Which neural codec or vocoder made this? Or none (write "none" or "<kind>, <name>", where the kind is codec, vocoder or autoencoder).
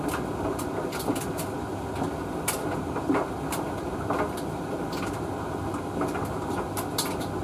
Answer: none